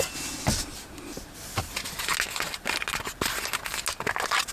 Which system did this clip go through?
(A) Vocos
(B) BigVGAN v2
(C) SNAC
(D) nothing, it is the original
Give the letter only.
D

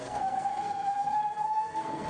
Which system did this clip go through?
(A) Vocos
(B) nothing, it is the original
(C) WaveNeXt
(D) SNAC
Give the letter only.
D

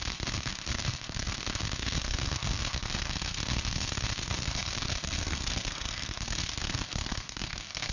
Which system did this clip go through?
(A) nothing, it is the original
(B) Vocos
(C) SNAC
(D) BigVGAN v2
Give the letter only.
C